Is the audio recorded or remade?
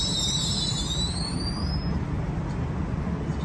recorded